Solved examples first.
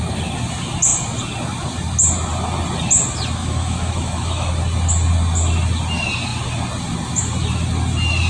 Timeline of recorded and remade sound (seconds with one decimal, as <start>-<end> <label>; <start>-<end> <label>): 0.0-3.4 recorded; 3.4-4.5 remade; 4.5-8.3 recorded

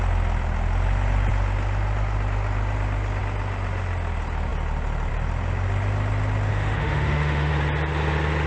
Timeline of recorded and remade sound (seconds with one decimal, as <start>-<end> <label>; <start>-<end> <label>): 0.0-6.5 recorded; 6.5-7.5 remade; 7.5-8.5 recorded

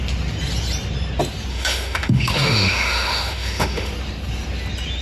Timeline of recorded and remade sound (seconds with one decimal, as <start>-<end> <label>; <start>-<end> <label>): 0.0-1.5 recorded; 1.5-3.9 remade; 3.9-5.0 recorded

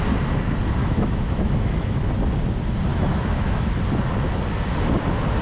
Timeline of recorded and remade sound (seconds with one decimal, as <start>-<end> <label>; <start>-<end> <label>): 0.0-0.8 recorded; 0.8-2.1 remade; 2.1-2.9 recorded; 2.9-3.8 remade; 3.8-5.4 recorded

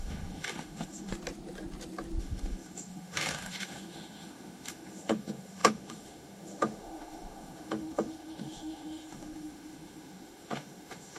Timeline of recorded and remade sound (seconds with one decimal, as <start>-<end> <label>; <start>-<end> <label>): 0.0-1.1 remade; 1.1-2.2 recorded; 2.2-11.2 remade

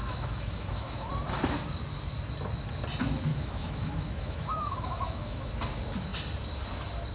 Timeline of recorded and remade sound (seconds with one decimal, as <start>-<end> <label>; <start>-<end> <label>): 0.0-1.1 remade; 1.1-3.3 recorded; 3.3-5.5 remade; 5.5-7.1 recorded